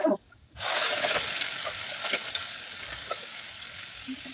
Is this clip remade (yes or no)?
yes